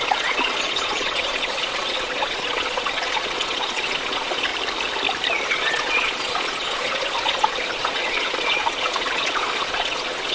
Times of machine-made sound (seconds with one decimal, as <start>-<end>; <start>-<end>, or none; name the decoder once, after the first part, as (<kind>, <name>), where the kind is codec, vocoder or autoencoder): 0.0-4.5 (vocoder, Vocos); 5.5-10.3